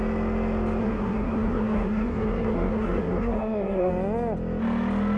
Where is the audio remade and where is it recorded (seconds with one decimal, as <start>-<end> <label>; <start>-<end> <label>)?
0.0-0.8 recorded; 0.8-3.9 remade; 3.9-5.2 recorded